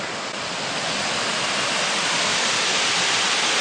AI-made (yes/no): no